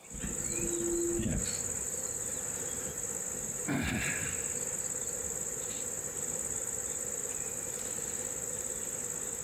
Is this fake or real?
real